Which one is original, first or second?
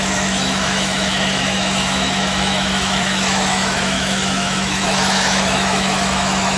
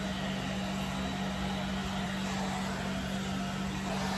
second